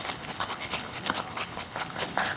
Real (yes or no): no